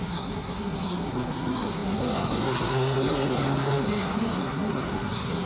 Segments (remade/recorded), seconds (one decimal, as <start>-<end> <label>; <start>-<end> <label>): 0.0-5.5 remade